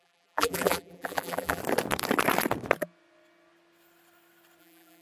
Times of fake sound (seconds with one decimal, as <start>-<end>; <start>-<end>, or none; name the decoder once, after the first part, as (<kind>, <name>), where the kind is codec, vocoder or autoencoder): 0.0-1.6 (vocoder, BigVGAN v2); 4.6-5.0